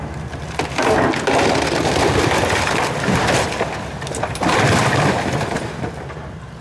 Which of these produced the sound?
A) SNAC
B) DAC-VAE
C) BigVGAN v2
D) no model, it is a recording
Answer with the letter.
D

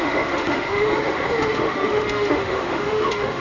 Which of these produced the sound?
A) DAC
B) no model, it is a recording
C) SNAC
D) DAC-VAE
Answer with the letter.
D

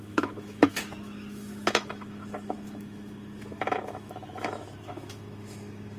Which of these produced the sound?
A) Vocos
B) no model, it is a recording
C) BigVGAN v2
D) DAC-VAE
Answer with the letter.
D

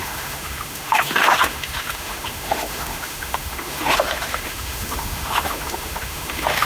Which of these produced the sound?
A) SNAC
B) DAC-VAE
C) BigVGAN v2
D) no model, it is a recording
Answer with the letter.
B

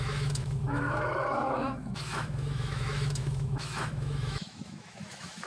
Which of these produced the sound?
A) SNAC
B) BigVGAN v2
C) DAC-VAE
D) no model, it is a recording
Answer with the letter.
C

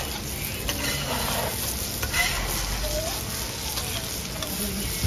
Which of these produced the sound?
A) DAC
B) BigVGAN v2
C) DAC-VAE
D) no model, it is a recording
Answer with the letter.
D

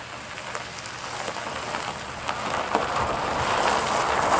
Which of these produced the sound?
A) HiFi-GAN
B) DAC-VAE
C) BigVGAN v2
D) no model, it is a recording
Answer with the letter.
D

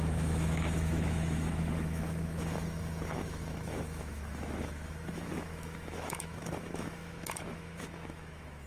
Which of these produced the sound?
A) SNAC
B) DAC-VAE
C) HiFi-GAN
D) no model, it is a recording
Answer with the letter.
B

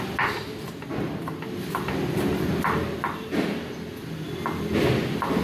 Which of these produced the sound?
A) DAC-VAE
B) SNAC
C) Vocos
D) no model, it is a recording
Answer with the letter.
D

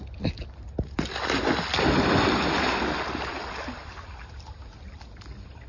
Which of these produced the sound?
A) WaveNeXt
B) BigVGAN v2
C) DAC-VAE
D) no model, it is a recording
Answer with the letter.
D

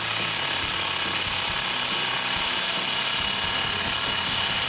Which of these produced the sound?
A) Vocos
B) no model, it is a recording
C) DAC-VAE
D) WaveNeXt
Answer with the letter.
B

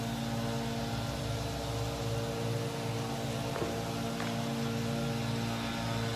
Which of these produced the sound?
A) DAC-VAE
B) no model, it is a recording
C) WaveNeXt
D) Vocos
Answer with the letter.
B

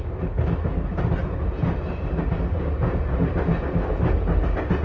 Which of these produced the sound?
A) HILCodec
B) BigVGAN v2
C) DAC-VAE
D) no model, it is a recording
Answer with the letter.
D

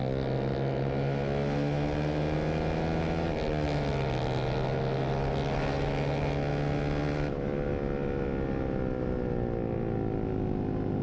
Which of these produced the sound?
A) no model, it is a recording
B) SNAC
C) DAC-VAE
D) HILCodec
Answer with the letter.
A